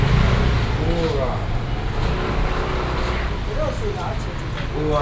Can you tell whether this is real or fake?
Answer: real